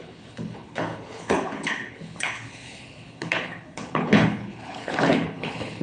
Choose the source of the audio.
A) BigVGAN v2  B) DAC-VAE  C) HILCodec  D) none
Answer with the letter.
C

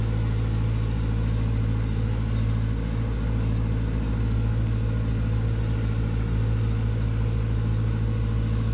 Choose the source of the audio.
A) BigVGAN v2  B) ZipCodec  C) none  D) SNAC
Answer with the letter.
C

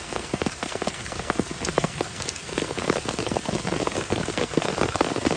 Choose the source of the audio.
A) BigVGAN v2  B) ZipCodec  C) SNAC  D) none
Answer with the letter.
C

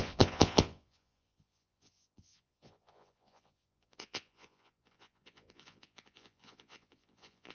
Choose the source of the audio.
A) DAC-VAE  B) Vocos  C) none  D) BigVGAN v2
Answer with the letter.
B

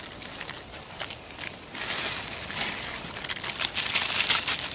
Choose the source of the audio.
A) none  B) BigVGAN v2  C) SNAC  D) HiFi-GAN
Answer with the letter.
A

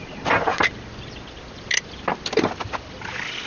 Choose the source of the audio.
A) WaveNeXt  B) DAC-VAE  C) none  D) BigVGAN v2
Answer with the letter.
C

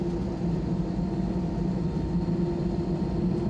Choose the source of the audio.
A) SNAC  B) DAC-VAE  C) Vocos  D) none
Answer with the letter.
D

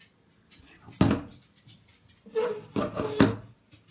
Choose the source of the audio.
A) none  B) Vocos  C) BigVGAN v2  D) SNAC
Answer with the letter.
A